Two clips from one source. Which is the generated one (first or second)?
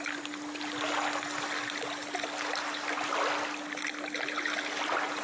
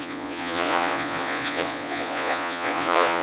second